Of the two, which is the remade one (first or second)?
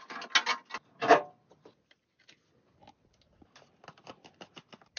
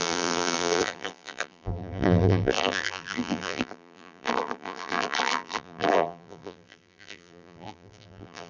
second